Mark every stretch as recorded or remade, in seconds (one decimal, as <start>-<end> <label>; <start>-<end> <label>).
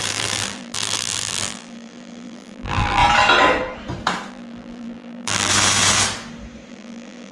0.0-3.0 remade; 3.0-4.3 recorded; 4.3-5.5 remade; 5.5-6.7 recorded; 6.7-7.3 remade